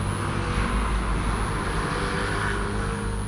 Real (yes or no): yes